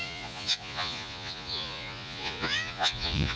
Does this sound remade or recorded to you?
remade